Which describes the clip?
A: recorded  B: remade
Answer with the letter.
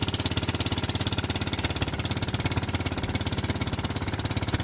A